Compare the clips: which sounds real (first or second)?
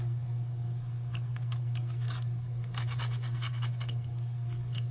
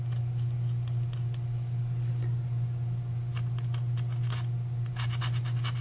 second